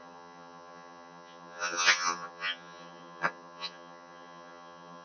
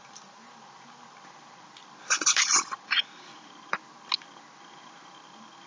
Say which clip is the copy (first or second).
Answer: first